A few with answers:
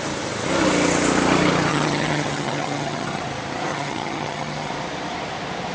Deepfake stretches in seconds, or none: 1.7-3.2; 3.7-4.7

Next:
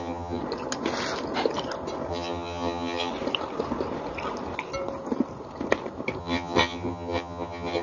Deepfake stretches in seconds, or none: 0.0-0.4; 2.1-3.1; 6.2-7.8

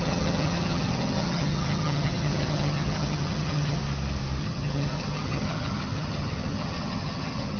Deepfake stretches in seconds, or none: 0.0-3.8; 4.4-7.6